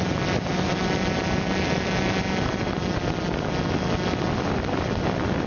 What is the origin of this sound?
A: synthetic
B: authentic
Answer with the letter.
B